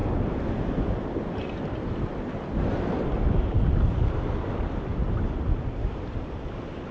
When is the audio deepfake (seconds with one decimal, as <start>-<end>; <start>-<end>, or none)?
none